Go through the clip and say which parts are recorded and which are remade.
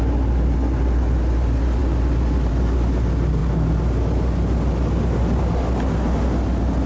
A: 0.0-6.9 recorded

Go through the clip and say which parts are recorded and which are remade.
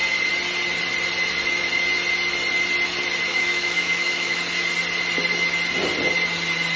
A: 0.0-3.3 recorded; 3.3-4.4 remade; 4.4-6.8 recorded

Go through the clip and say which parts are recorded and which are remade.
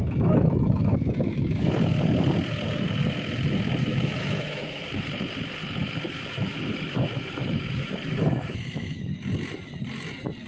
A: 0.0-1.7 remade; 1.7-3.8 recorded; 3.8-4.9 remade; 4.9-5.8 recorded; 5.8-9.1 remade; 9.1-10.5 recorded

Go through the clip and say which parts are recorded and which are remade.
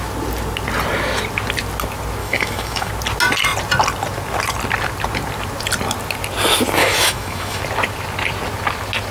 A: 0.0-2.2 recorded; 2.2-2.9 remade; 2.9-6.8 recorded; 6.8-7.6 remade; 7.6-9.1 recorded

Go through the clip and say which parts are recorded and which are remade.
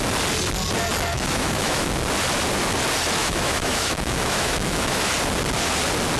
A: 0.0-1.1 recorded; 1.1-1.9 remade; 1.9-3.2 recorded; 3.2-5.0 remade; 5.0-6.2 recorded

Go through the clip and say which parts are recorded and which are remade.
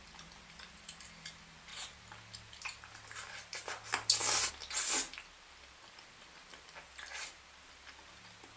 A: 0.0-8.6 recorded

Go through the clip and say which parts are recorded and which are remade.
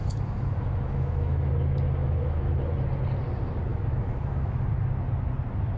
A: 0.0-1.5 remade; 1.5-2.0 recorded; 2.0-2.6 remade; 2.6-3.7 recorded; 3.7-4.7 remade; 4.7-5.8 recorded